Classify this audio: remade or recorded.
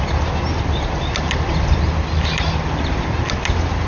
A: recorded